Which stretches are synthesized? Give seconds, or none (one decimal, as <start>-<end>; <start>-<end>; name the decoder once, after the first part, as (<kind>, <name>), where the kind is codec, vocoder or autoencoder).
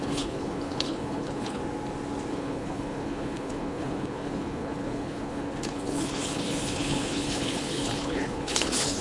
0.0-1.6 (codec, HILCodec); 2.3-9.0